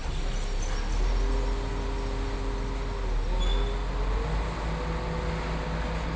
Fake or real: real